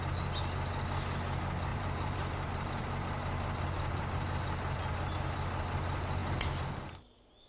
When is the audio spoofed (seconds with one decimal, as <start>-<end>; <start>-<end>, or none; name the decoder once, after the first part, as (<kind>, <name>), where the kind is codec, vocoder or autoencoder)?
1.7-4.3 (vocoder, BigVGAN v2)